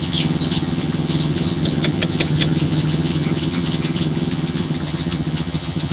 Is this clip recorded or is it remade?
remade